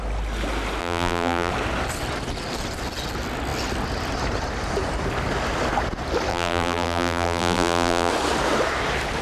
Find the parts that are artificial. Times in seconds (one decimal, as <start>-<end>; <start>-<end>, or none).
0.8-1.5; 6.3-8.1